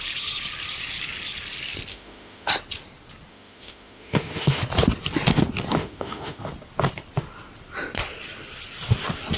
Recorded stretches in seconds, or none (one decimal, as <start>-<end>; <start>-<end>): 0.0-1.9; 2.5-3.3; 4.6-5.8; 6.4-9.4